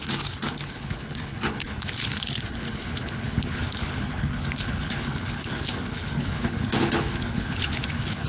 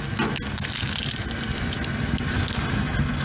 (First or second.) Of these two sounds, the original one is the second